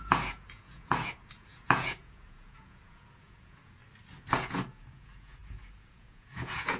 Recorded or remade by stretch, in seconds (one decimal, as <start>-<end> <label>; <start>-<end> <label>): 0.0-3.8 remade; 3.8-4.3 recorded; 4.3-6.8 remade